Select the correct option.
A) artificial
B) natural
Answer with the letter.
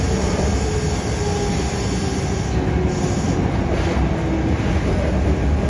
B